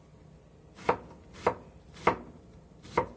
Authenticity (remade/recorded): recorded